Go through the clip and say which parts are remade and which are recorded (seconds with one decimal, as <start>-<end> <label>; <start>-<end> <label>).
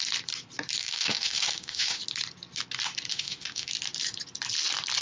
0.0-0.8 recorded; 0.8-2.0 remade; 2.0-3.1 recorded; 3.1-3.7 remade; 3.7-5.0 recorded